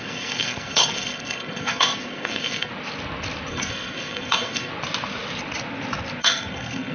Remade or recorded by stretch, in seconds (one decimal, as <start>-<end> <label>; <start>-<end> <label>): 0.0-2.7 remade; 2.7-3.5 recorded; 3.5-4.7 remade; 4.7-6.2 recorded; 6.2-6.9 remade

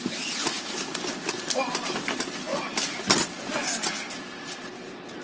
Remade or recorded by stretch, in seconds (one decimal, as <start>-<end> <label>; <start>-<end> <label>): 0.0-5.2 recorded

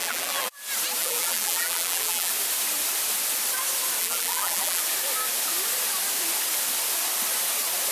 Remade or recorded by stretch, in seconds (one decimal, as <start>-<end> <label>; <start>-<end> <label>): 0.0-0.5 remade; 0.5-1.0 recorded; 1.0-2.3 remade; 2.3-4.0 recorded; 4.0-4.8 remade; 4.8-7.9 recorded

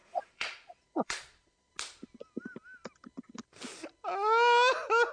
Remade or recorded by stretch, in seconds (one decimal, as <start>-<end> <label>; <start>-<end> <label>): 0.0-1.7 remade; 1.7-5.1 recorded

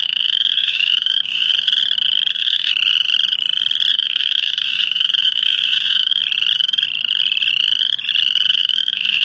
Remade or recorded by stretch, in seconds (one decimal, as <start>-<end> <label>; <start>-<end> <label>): 0.0-1.5 remade; 1.5-2.3 recorded; 2.3-2.7 remade; 2.7-3.9 recorded; 3.9-6.2 remade; 6.2-8.5 recorded; 8.5-9.2 remade